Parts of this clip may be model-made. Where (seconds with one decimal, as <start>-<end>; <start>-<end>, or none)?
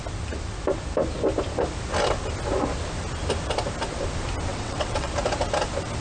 4.5-5.1